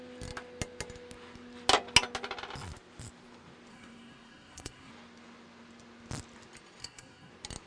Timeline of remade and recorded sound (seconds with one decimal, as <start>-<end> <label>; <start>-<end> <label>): 0.0-3.7 recorded; 3.7-4.9 remade; 4.9-6.8 recorded; 6.8-7.3 remade; 7.3-7.7 recorded